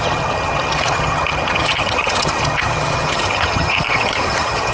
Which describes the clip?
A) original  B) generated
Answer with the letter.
B